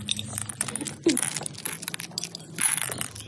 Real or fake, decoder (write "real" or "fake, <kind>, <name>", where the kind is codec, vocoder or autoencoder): real